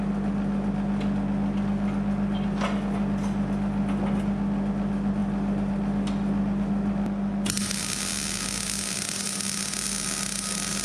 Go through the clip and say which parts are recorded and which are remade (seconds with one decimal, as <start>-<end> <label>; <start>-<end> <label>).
0.0-5.2 recorded; 5.2-5.7 remade; 5.7-10.8 recorded